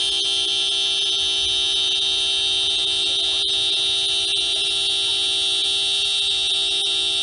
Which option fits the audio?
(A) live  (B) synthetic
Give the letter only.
A